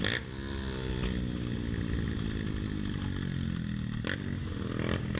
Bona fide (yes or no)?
yes